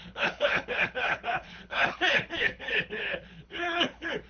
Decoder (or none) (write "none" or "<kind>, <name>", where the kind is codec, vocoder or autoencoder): codec, HILCodec